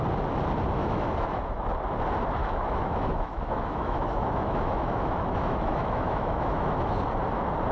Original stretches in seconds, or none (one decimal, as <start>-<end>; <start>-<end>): 0.0-0.8; 1.7-2.4; 7.0-7.7